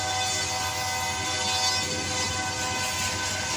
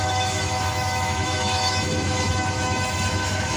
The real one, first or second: first